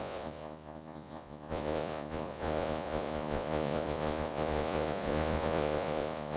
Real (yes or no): no